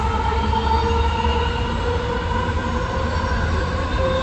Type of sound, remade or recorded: recorded